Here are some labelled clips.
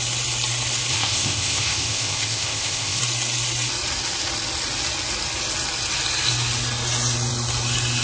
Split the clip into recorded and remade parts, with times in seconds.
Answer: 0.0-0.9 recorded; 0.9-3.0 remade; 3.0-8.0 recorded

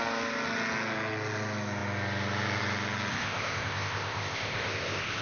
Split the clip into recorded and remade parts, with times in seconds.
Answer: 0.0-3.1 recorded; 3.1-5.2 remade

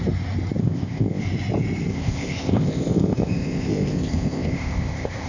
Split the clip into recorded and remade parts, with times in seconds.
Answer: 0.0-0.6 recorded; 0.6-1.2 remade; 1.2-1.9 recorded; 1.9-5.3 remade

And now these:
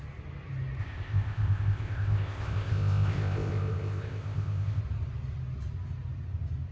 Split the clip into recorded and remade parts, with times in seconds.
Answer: 0.0-0.8 recorded; 0.8-4.8 remade; 4.8-6.7 recorded